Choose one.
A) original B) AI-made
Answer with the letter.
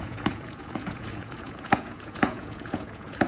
B